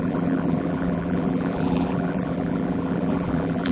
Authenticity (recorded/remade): remade